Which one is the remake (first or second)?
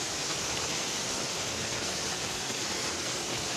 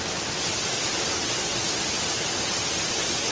first